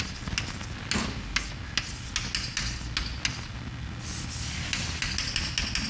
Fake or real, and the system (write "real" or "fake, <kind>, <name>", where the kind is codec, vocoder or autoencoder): real